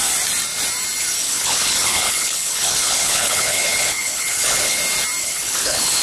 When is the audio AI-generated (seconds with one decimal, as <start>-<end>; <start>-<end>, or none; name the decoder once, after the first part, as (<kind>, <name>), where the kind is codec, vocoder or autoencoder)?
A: 1.2-4.8 (codec, HILCodec); 5.2-6.0